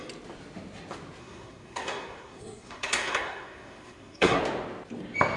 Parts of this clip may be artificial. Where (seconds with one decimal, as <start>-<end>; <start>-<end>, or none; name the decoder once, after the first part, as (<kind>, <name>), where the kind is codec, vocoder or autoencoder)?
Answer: 1.2-4.4 (codec, SNAC)